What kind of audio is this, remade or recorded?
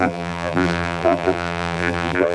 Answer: remade